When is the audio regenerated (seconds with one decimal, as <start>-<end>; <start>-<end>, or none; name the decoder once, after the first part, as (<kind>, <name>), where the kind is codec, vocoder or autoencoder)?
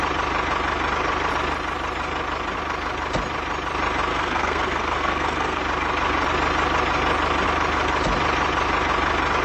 4.1-5.6 (codec, SNAC)